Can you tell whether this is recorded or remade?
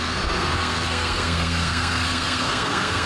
remade